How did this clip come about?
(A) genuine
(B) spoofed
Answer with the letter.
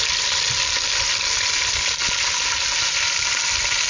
A